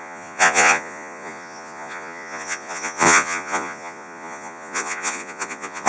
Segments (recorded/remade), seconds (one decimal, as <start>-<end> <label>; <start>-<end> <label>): 0.0-5.9 remade